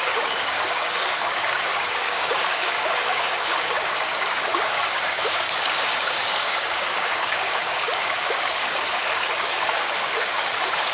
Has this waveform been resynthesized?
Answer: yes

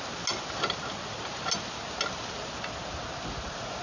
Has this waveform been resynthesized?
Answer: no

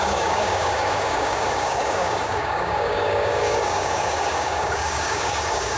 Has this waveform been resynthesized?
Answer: yes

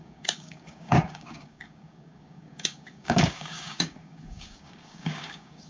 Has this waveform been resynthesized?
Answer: yes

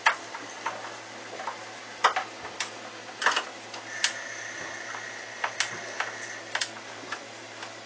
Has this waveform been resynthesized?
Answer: no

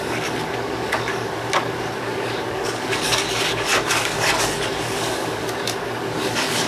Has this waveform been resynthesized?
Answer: yes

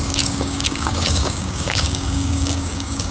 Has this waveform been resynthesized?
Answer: yes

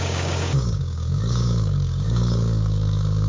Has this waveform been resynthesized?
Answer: yes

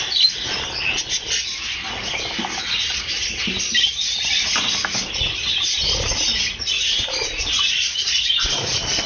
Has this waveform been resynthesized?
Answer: no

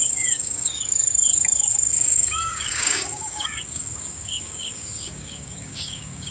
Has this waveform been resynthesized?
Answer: yes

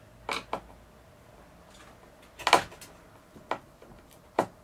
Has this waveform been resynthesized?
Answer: no